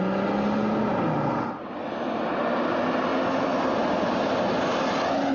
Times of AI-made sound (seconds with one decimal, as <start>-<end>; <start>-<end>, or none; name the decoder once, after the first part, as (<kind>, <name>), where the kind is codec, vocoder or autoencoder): none